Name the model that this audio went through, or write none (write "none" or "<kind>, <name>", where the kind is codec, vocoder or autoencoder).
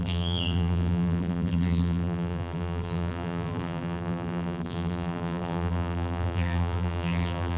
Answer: vocoder, BigVGAN v2